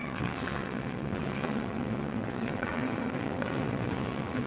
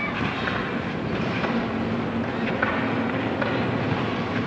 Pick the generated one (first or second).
first